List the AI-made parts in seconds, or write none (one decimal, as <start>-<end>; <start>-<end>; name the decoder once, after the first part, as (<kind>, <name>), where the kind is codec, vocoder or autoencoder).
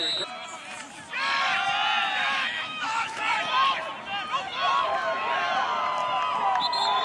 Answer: 2.2-3.2 (autoencoder, DAC-VAE)